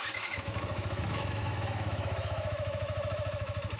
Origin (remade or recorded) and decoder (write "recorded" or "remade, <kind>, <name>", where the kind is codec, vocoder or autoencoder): remade, autoencoder, DAC-VAE